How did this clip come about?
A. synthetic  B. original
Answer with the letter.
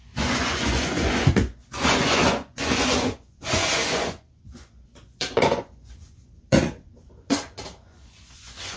A